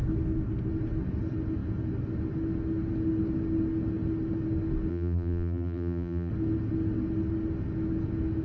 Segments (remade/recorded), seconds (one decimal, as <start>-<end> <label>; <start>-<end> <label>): 0.0-4.9 recorded; 4.9-6.3 remade; 6.3-8.4 recorded

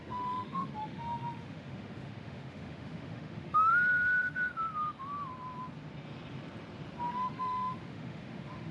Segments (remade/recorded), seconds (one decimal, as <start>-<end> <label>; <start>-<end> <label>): 0.0-3.7 remade; 3.7-7.1 recorded; 7.1-8.7 remade

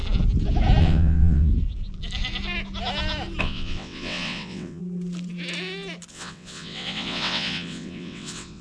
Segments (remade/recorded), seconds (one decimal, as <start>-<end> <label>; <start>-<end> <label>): 0.0-0.8 recorded; 0.8-1.5 remade; 1.5-3.4 recorded; 3.4-4.8 remade; 4.8-6.1 recorded; 6.1-8.6 remade